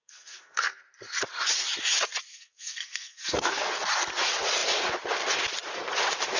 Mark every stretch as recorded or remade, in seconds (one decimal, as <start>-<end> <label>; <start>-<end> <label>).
0.0-0.8 remade; 0.8-2.3 recorded; 2.3-3.7 remade; 3.7-6.4 recorded